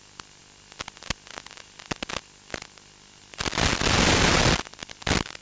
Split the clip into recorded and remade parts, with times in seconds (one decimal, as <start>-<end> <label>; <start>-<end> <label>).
0.0-5.4 recorded